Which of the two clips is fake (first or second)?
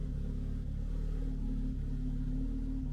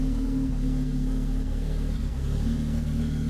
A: second